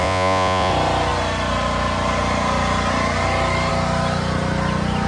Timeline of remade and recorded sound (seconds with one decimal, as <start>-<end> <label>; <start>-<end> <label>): 0.0-0.7 remade; 0.7-5.1 recorded

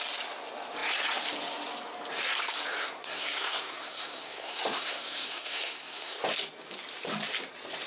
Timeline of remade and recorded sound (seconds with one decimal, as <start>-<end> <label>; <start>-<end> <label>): 0.0-2.8 recorded; 2.8-6.2 remade; 6.2-7.9 recorded

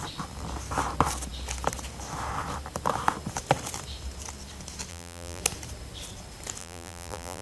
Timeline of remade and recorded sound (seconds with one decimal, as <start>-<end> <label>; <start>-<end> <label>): 0.0-4.9 recorded; 4.9-5.4 remade; 5.4-6.6 recorded; 6.6-7.4 remade

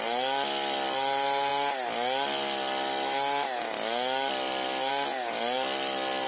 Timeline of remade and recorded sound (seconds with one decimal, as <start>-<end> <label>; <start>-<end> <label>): 0.0-6.3 recorded

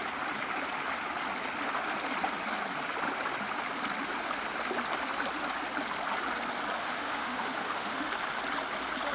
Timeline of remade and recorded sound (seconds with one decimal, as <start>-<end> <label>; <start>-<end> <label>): 0.0-6.8 recorded; 6.8-8.1 remade; 8.1-9.1 recorded

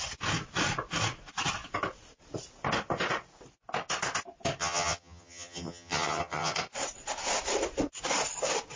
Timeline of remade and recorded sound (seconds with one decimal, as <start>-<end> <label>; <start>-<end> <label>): 0.0-4.6 recorded; 4.6-6.5 remade; 6.5-8.8 recorded

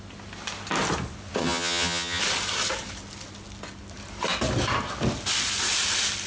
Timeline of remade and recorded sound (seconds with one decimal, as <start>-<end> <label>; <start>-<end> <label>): 0.0-1.4 recorded; 1.4-2.2 remade; 2.2-6.3 recorded